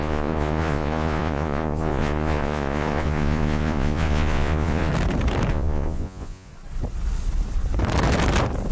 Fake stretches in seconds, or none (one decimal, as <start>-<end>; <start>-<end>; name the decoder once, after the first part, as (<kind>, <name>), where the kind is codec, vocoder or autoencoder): 0.0-4.9 (vocoder, Vocos); 5.5-6.5